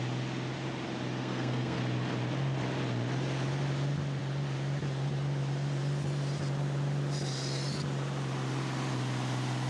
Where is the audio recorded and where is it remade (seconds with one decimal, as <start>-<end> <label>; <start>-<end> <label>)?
0.0-1.2 recorded; 1.2-1.8 remade; 1.8-9.7 recorded